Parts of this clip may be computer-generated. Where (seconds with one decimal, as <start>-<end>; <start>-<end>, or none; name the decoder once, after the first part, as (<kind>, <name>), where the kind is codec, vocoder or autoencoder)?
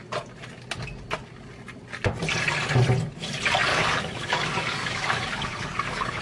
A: 3.7-6.2 (codec, DAC)